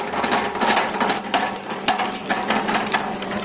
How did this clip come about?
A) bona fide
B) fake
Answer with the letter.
A